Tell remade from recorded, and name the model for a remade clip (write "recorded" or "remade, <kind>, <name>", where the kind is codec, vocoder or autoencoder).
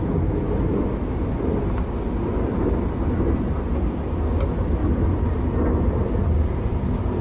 recorded